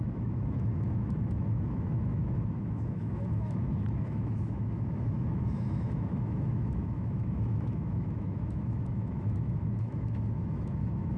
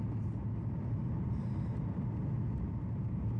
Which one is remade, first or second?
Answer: first